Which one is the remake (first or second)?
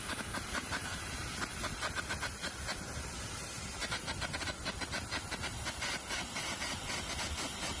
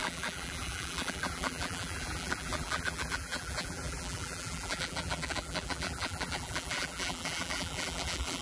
second